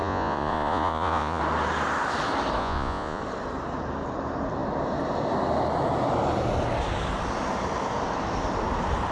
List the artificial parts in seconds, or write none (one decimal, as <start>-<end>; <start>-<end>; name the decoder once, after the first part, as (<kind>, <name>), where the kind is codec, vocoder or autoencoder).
0.0-1.4 (vocoder, Vocos); 2.6-3.2